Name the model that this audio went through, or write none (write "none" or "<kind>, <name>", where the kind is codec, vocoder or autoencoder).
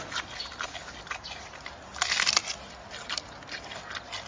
none